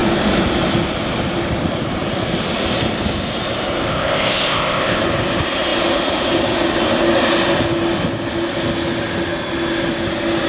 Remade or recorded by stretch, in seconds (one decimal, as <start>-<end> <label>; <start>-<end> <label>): 0.0-3.9 recorded; 3.9-5.0 remade; 5.0-10.5 recorded